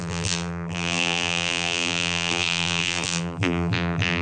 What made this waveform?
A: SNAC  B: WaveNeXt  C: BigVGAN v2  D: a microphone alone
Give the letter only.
C